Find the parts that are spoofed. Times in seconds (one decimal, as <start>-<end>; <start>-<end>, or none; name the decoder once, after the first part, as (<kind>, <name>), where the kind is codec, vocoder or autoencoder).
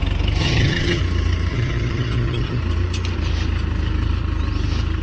0.4-1.0 (vocoder, HiFi-GAN); 1.5-2.6